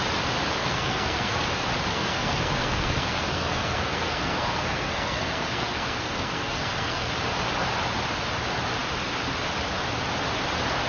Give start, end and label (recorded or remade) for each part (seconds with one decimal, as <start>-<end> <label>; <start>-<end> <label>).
0.0-0.6 recorded; 0.6-1.4 remade; 1.4-1.9 recorded; 1.9-7.1 remade; 7.1-10.9 recorded